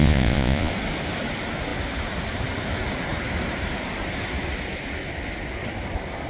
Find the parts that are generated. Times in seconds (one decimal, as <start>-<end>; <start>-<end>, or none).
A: 0.0-0.7